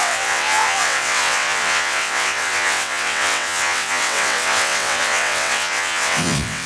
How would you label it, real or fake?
fake